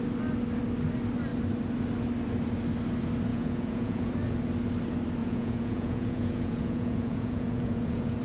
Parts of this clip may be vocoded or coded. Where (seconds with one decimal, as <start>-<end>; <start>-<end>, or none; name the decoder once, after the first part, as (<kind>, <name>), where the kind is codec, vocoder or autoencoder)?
3.3-4.1 (vocoder, Vocos); 5.2-8.2